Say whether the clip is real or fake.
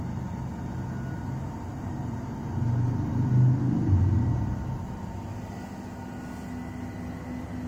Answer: real